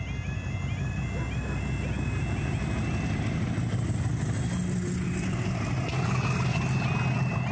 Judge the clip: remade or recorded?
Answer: recorded